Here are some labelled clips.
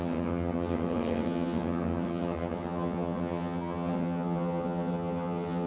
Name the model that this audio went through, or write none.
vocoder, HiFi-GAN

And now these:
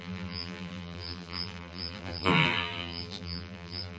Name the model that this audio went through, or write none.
vocoder, BigVGAN v2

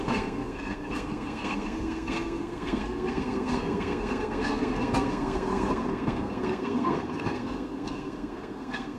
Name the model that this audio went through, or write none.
codec, SNAC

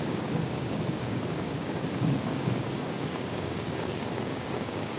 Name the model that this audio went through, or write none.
codec, DAC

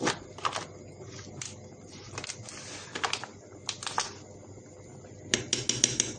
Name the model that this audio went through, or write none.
none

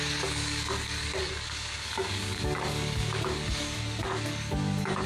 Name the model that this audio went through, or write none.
codec, DAC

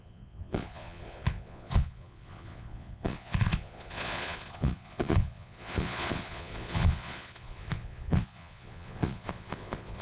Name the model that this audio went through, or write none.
vocoder, Vocos